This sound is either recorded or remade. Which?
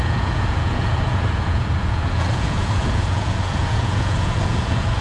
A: remade